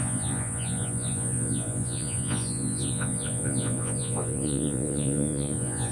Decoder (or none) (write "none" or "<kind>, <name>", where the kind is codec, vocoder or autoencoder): vocoder, Vocos